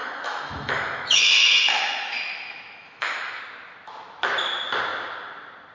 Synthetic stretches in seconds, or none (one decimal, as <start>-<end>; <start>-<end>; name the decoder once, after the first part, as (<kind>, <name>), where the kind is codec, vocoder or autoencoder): 0.0-3.4 (autoencoder, DAC-VAE)